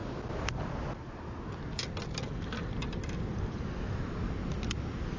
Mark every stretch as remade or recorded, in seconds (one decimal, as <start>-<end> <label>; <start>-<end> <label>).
0.0-5.2 recorded